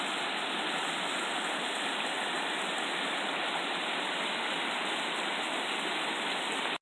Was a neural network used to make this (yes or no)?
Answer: no